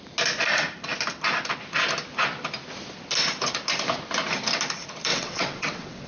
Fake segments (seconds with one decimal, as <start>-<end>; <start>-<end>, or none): 5.1-6.1